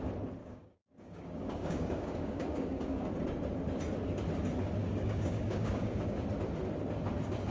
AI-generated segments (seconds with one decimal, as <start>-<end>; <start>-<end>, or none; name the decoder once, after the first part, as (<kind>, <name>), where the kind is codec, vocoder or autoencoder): 0.4-3.1 (codec, DAC); 4.8-6.2